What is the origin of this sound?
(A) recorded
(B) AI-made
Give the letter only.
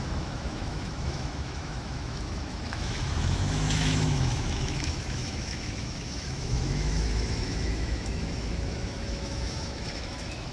B